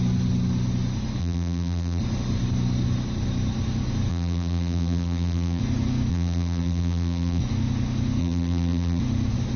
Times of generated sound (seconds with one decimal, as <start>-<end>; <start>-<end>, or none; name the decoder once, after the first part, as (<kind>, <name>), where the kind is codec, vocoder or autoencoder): 1.2-2.0 (vocoder, BigVGAN v2); 4.1-5.6; 6.1-7.4; 8.2-9.0